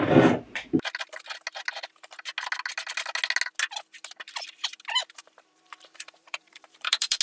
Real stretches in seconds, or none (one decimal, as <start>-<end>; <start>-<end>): 0.0-5.0